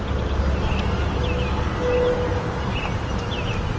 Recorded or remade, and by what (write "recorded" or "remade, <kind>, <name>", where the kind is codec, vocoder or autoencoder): recorded